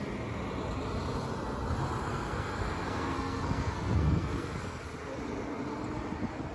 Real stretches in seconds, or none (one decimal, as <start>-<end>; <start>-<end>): 0.0-2.0; 4.9-6.5